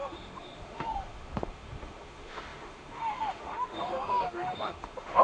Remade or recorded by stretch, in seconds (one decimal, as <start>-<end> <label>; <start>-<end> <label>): 0.0-5.2 remade